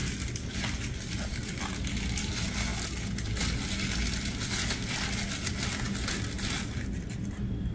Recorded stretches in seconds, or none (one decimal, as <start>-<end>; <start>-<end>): 0.0-7.7